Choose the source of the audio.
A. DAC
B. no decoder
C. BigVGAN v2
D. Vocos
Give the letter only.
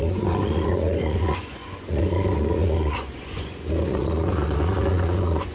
D